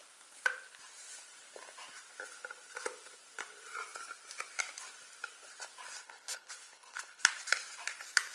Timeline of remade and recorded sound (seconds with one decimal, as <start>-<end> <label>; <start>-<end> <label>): 0.0-6.0 recorded; 6.0-7.2 remade; 7.2-8.3 recorded